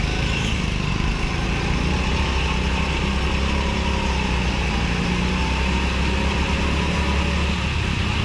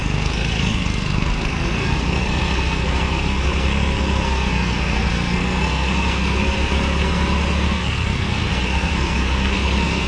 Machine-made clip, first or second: second